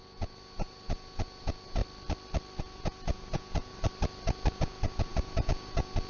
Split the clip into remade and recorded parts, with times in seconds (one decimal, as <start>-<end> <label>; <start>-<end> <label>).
0.0-1.8 remade; 1.8-2.6 recorded; 2.6-3.7 remade; 3.7-4.5 recorded; 4.5-6.1 remade